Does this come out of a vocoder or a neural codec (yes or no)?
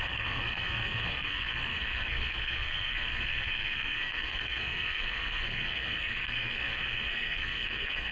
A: yes